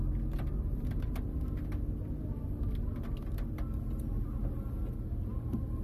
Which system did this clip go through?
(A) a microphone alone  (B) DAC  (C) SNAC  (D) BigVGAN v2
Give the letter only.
A